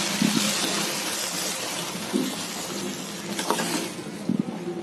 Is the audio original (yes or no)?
yes